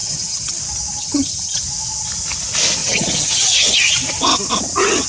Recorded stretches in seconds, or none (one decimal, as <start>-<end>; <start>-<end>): 0.6-1.0; 1.6-2.8; 3.9-5.1